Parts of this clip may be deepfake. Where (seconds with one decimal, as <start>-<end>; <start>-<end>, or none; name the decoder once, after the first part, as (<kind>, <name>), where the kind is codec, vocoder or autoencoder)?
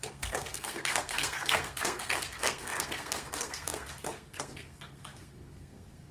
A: 0.0-6.1 (codec, SNAC)